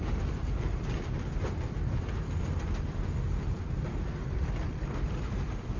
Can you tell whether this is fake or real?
real